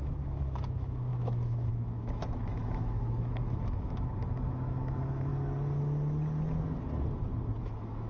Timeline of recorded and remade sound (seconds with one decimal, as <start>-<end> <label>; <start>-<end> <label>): 0.0-5.3 remade; 5.3-7.6 recorded; 7.6-8.1 remade